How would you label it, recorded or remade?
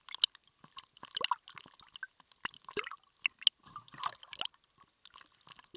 recorded